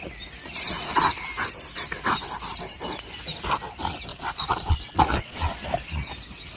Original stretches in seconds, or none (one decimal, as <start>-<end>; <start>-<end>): 0.0-4.1; 5.5-6.6